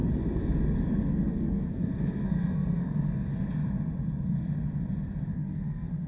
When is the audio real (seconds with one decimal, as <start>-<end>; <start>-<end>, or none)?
0.0-1.1; 3.3-5.3